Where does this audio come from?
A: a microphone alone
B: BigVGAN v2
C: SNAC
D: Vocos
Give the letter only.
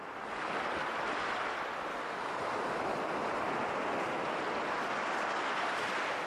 A